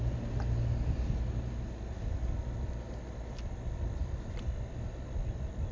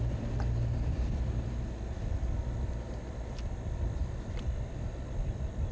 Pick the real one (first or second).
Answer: first